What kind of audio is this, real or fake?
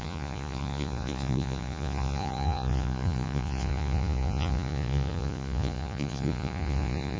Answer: fake